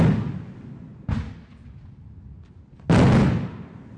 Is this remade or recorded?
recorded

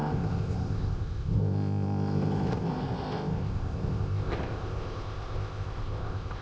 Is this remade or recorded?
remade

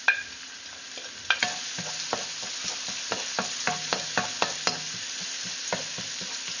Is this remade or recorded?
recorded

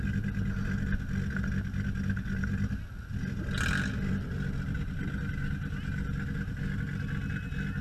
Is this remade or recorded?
recorded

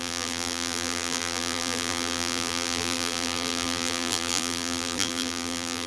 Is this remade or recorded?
remade